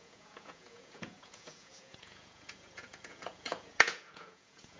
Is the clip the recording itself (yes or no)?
no